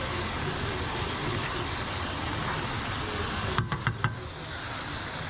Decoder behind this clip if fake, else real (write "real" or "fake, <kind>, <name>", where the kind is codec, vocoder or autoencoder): real